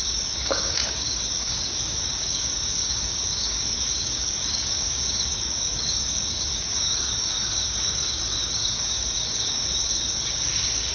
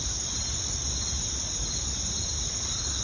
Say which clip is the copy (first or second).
first